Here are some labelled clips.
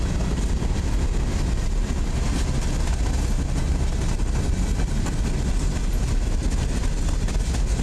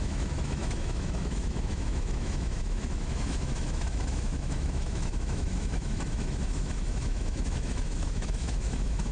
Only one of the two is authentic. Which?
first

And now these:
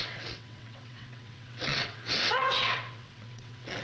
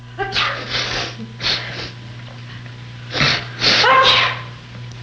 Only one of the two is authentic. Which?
second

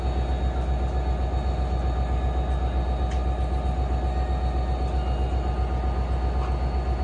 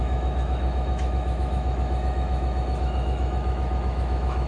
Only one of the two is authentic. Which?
first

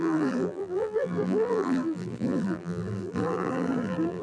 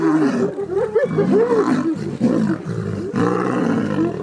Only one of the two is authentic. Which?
second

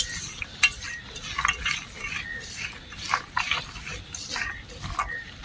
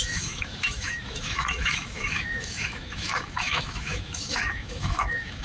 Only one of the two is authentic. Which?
first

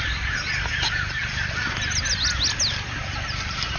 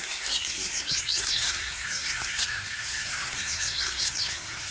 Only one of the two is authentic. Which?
first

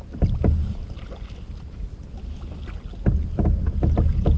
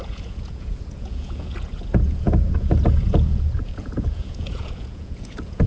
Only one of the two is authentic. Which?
first